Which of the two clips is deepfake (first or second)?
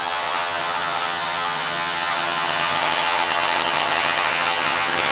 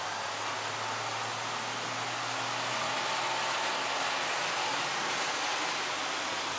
first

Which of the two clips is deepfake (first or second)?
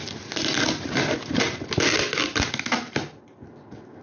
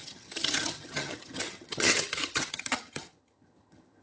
second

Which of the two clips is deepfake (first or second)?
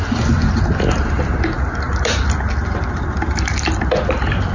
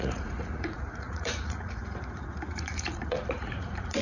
second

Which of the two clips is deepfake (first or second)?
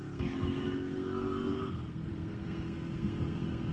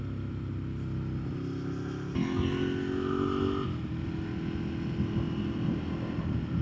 first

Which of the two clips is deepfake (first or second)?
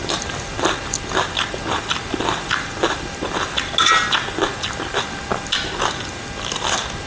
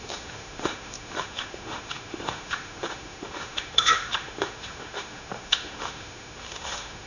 second